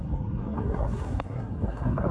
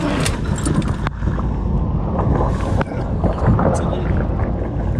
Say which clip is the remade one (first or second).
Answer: first